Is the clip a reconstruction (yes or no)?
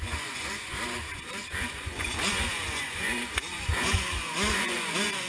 yes